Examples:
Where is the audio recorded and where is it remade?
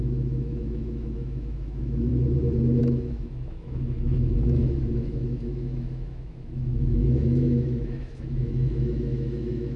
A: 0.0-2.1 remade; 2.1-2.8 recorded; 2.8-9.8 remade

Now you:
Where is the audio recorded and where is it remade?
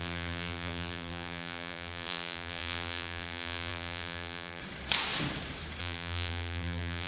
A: 0.0-4.6 remade; 4.6-5.8 recorded; 5.8-7.1 remade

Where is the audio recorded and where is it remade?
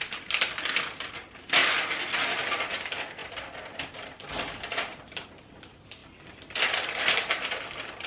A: 0.0-1.6 recorded; 1.6-2.1 remade; 2.1-6.0 recorded; 6.0-7.5 remade; 7.5-8.1 recorded